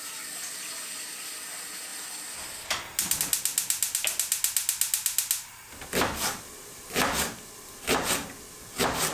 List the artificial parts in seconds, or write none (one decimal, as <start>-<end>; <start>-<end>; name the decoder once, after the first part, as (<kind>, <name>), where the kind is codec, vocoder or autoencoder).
none